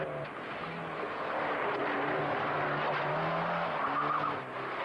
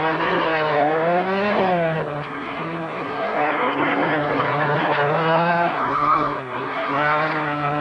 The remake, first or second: second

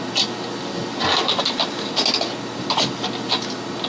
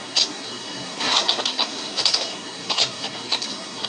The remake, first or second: second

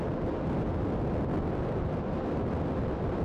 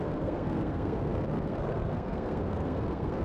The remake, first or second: second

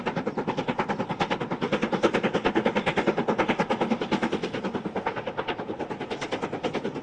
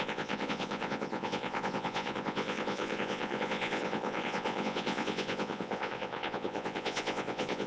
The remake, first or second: second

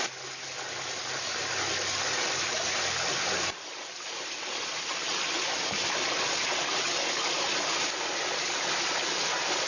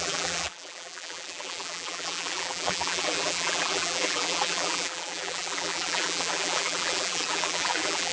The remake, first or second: second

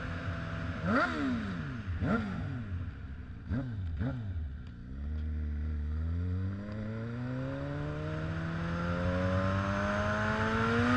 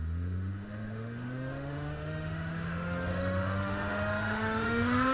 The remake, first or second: second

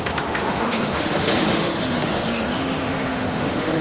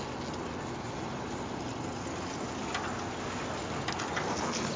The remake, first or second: first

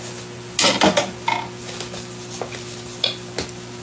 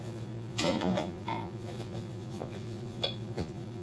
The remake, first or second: second